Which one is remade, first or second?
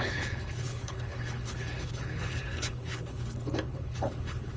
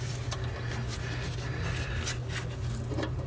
first